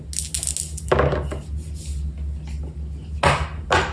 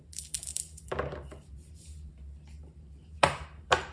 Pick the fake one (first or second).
second